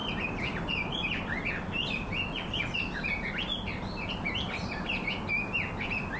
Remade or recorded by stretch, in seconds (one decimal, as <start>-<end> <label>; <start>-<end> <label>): 0.0-2.6 remade; 2.6-6.2 recorded